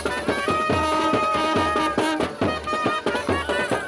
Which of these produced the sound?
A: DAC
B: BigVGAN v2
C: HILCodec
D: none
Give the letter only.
D